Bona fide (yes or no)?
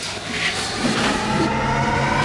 yes